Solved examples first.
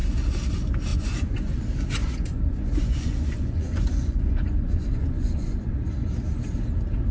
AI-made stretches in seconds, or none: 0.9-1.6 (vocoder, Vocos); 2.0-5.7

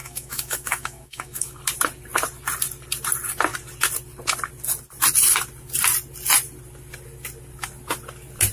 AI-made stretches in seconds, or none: 0.0-1.6 (autoencoder, DAC-VAE)

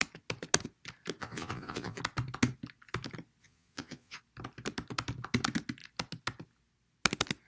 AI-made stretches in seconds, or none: 1.2-2.0 (vocoder, Vocos); 3.4-4.2

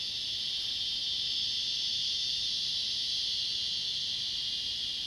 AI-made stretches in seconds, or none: none

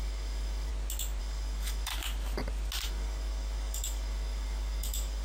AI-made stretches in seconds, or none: 0.0-0.7 (codec, DAC); 1.2-1.9; 2.9-5.2